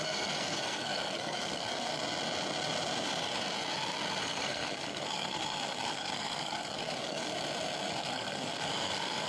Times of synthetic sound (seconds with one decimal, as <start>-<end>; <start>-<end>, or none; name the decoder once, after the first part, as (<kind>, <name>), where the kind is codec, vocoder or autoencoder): 0.0-1.9 (codec, SNAC); 4.2-7.3; 7.9-9.3